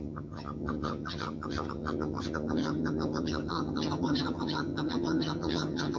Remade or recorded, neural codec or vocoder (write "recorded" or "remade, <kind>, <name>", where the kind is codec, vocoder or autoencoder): remade, vocoder, HiFi-GAN